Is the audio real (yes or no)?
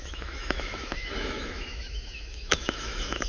no